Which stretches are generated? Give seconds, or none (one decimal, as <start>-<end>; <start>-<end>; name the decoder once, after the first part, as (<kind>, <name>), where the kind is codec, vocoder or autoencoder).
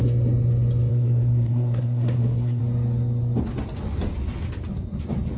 0.9-2.6 (codec, SNAC)